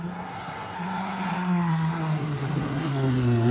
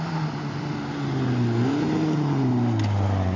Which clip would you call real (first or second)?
second